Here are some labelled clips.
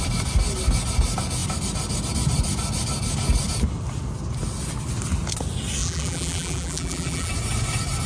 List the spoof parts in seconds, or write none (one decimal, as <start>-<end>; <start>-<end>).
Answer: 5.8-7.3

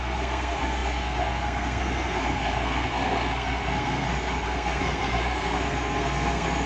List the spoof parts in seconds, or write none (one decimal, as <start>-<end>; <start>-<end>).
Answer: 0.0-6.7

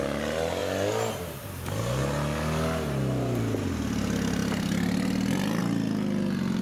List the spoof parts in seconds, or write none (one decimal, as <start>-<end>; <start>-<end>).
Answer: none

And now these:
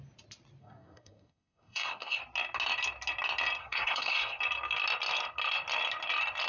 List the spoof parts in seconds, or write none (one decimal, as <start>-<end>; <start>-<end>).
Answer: 0.6-2.2; 3.6-4.4